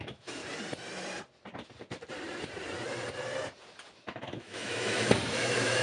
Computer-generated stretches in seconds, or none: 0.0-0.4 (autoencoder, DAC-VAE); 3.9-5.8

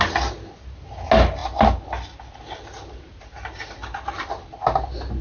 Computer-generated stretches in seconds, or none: none

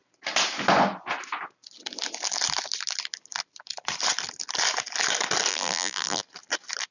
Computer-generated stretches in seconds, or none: 5.5-6.2 (vocoder, BigVGAN v2)

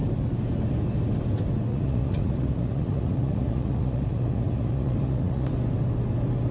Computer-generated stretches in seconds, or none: 1.7-5.5 (vocoder, Vocos)

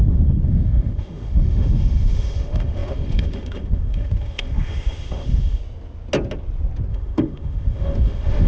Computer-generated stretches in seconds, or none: 0.0-5.6 (autoencoder, DAC-VAE); 6.9-8.5

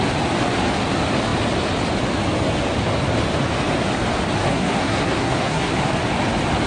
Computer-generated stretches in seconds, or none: 4.4-5.7 (codec, SNAC)

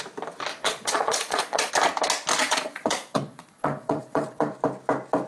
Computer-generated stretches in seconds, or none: 0.5-1.7 (vocoder, Vocos); 2.4-4.5